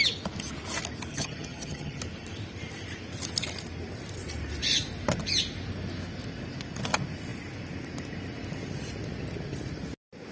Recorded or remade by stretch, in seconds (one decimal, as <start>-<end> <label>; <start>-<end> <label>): 0.0-1.1 recorded; 1.1-2.0 remade; 2.0-10.3 recorded